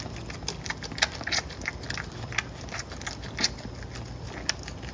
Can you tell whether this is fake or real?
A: real